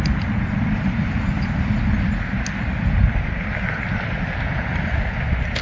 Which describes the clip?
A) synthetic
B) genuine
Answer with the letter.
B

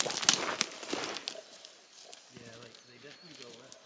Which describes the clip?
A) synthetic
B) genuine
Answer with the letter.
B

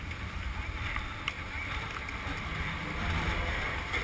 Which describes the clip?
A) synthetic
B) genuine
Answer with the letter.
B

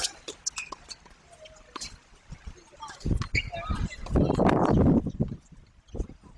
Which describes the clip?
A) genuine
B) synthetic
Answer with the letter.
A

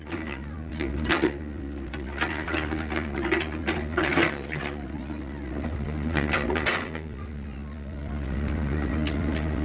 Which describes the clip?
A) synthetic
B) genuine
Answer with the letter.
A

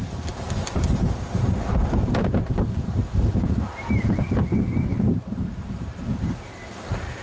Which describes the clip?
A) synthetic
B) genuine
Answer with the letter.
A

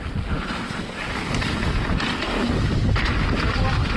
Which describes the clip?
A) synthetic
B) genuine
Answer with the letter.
B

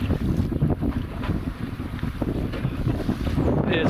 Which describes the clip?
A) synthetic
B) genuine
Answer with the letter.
B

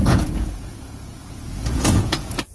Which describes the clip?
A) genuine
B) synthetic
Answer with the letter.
B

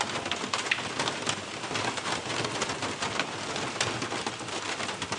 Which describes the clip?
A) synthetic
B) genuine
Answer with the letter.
B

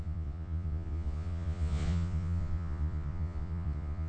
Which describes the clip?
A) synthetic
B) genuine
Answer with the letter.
A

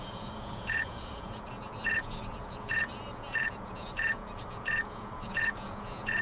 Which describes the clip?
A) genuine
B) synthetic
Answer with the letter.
B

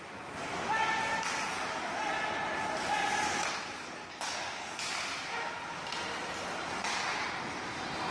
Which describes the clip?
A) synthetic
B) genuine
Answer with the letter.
B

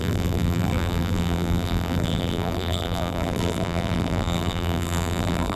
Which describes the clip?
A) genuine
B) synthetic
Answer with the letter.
B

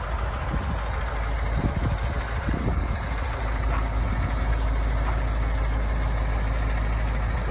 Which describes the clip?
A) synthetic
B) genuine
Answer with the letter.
B